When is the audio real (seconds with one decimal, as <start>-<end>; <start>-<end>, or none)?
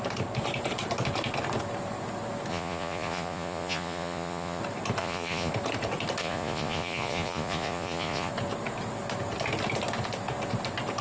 0.0-2.5; 4.6-5.0; 5.5-6.2; 8.3-11.0